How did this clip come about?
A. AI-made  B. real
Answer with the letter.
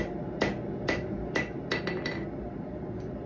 B